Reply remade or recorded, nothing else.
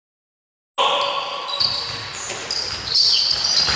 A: recorded